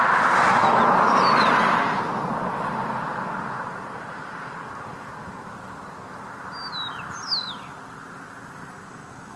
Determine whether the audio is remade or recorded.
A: recorded